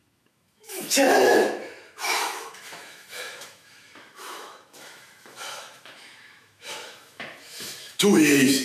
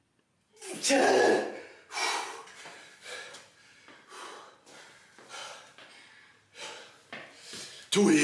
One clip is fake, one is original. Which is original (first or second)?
second